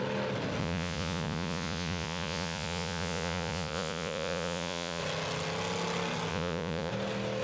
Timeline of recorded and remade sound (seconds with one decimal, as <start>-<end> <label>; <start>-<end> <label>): 0.0-0.6 recorded; 0.6-5.0 remade; 5.0-6.3 recorded; 6.3-6.9 remade; 6.9-7.4 recorded